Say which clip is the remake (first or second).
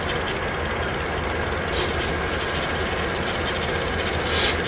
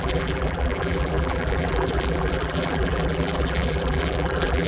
second